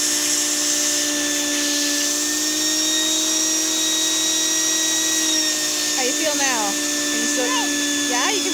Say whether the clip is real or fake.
real